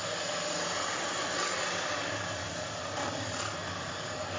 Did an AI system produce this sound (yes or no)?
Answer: no